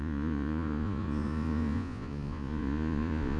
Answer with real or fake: fake